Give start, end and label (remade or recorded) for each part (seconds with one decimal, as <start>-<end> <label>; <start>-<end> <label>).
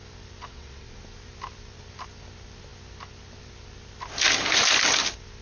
0.0-0.4 recorded; 0.4-1.0 remade; 1.0-5.4 recorded